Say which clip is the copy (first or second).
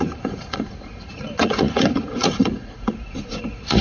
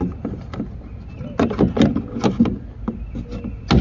first